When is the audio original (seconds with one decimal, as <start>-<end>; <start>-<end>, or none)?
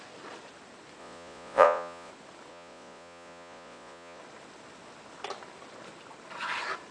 0.0-1.0; 2.1-2.5; 4.2-6.9